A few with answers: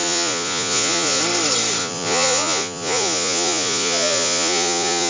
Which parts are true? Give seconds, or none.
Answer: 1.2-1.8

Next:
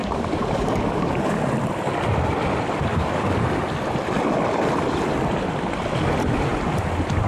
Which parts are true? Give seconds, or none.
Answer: 1.5-2.9; 3.4-7.3

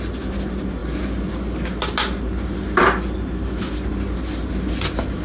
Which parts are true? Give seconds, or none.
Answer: 0.0-5.2

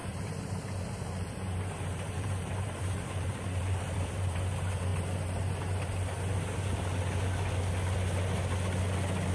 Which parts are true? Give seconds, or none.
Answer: 4.4-9.3

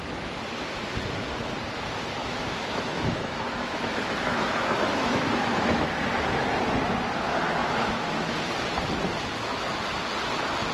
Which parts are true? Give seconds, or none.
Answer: 0.0-2.2; 5.9-7.6; 8.5-10.7

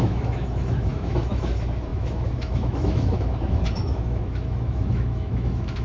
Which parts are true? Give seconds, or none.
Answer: none